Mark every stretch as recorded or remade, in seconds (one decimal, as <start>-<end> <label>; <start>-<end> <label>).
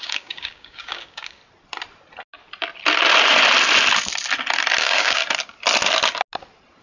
0.0-1.4 remade; 1.4-4.8 recorded; 4.8-5.2 remade; 5.2-6.8 recorded